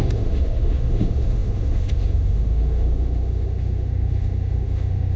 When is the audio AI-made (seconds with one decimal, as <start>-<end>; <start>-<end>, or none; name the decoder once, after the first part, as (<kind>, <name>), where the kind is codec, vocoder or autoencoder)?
0.0-5.2 (autoencoder, DAC-VAE)